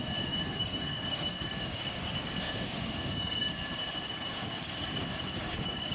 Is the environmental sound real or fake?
fake